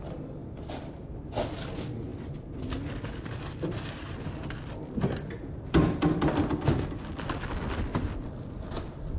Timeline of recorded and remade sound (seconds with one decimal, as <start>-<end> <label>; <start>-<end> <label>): 0.0-9.2 recorded